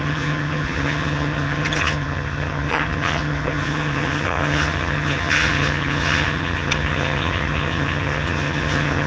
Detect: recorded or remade remade